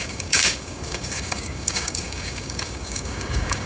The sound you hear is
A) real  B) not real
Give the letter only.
B